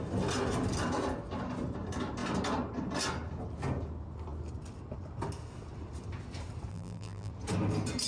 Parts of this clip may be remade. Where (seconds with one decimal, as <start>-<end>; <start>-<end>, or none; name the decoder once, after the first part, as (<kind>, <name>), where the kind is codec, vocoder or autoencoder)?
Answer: 6.7-7.3 (vocoder, BigVGAN v2)

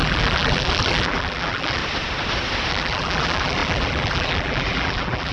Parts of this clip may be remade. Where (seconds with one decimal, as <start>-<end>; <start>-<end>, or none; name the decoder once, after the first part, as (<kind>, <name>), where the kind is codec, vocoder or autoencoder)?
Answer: 0.0-1.8 (vocoder, BigVGAN v2); 2.7-5.3